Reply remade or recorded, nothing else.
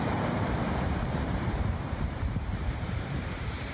remade